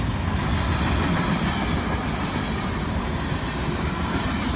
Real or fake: real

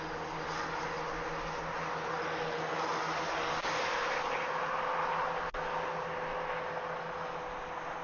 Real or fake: real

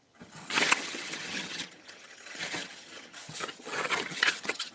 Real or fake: fake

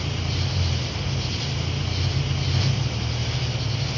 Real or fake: real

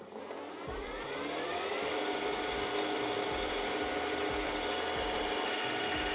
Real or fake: real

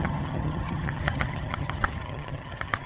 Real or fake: fake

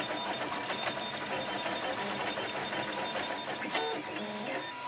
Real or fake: real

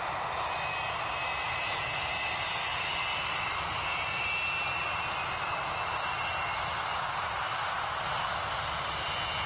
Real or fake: real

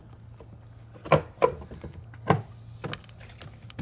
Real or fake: real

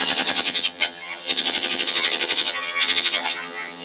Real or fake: fake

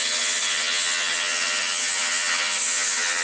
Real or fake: fake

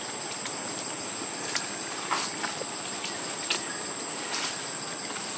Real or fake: real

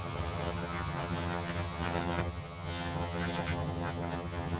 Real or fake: fake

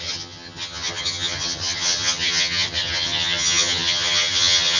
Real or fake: fake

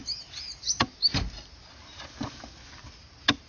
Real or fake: real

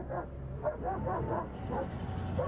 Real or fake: real